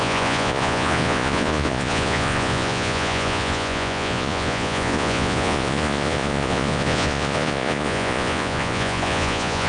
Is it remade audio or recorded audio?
remade